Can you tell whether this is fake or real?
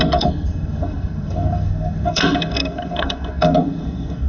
fake